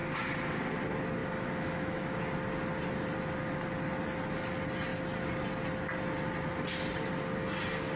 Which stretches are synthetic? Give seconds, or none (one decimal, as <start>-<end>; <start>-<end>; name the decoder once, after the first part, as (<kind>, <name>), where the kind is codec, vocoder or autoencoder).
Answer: 1.2-2.2 (autoencoder, DAC-VAE)